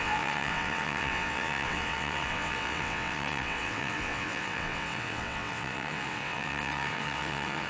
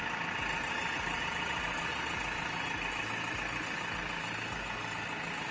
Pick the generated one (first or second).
first